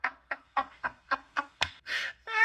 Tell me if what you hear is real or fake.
fake